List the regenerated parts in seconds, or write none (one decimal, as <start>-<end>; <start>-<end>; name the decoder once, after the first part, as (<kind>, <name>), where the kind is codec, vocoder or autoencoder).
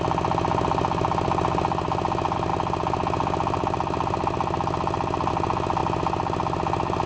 none